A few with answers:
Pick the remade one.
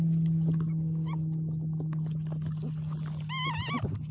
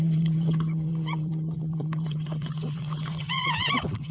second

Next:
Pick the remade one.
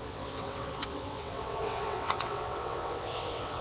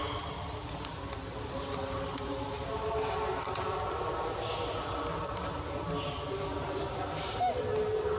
first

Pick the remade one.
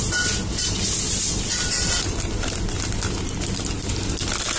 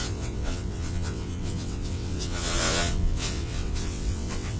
second